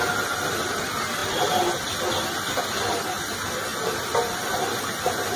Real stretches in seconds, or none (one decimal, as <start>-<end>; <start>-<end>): 0.0-5.4